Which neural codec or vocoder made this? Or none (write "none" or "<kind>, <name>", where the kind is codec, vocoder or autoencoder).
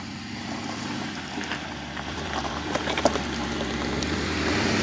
vocoder, BigVGAN v2